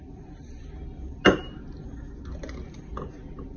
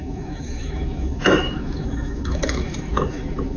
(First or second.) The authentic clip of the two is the first